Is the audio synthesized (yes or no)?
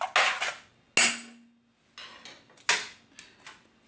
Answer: no